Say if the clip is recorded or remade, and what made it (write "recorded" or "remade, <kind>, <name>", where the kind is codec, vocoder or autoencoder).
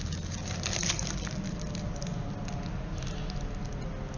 recorded